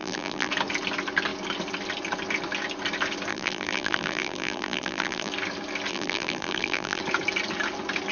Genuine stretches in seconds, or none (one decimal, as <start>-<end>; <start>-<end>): 0.5-3.3; 5.3-5.9; 7.0-8.1